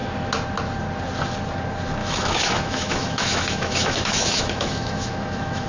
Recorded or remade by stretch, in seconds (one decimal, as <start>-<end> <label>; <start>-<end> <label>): 0.0-2.0 recorded; 2.0-5.7 remade